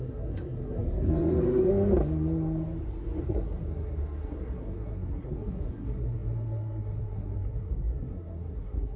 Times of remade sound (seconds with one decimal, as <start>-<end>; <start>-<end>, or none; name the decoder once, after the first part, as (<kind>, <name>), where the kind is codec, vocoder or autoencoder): 0.0-1.7 (codec, SNAC); 3.2-9.0